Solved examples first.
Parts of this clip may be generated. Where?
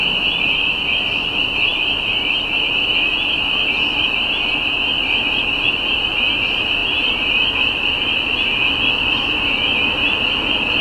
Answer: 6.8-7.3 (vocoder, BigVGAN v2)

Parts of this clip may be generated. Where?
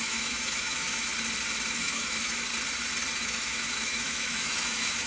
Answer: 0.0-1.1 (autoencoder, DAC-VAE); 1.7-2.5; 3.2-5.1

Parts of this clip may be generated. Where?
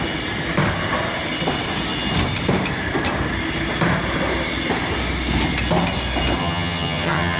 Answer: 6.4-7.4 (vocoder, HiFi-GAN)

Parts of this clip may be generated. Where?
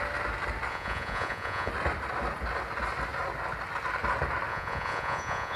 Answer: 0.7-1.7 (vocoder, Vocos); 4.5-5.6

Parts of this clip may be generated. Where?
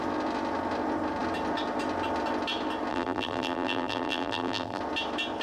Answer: 2.9-4.8 (vocoder, BigVGAN v2)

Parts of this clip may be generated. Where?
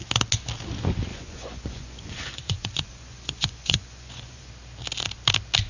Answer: 1.1-4.5 (vocoder, Vocos)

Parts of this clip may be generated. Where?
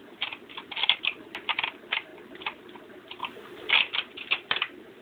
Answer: 3.2-3.7 (vocoder, BigVGAN v2)